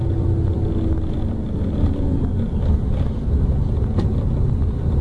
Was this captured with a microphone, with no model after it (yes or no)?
yes